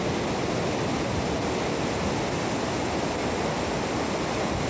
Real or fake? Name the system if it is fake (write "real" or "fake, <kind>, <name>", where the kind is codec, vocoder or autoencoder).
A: real